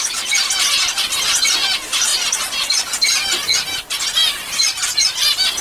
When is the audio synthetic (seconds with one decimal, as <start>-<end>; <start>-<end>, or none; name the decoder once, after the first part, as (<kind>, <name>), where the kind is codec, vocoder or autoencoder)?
none